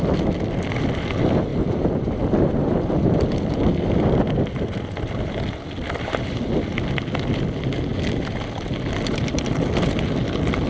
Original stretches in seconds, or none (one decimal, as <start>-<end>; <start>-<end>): 0.0-1.5; 6.5-10.7